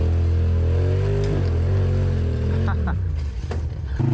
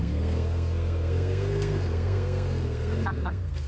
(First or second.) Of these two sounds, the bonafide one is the first